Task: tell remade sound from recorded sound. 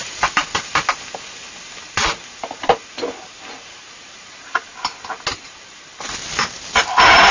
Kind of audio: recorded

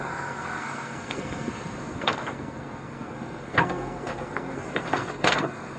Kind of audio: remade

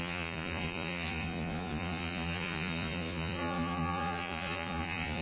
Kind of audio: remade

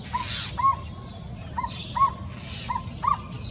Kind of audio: recorded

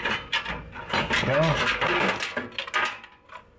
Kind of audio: recorded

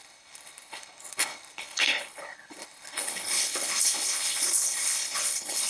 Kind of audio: remade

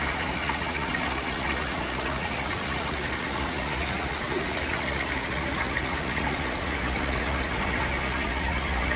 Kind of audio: remade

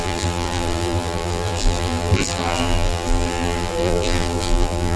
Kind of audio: remade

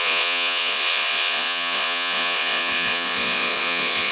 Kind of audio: remade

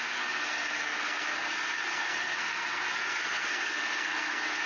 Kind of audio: remade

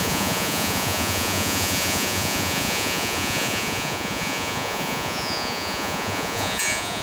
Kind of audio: remade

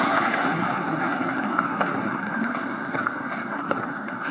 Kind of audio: remade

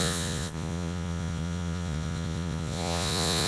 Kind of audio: remade